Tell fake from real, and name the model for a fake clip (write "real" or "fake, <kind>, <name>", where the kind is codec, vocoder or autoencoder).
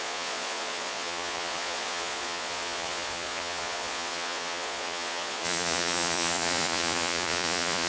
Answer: fake, vocoder, Vocos